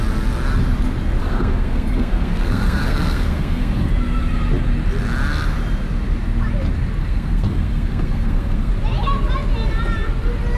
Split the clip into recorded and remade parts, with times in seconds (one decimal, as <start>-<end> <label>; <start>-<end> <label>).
0.0-1.2 recorded; 1.2-3.9 remade; 3.9-7.0 recorded; 7.0-8.7 remade; 8.7-10.6 recorded